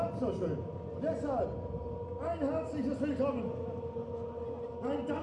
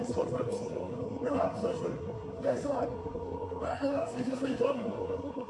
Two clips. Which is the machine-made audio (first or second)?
second